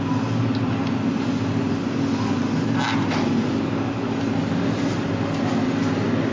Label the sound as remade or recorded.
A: recorded